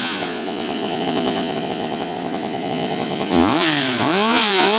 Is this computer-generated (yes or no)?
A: yes